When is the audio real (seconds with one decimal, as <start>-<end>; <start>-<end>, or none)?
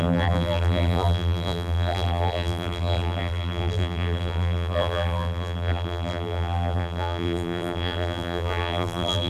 none